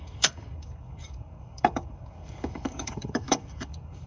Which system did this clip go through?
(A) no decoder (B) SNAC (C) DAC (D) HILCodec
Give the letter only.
C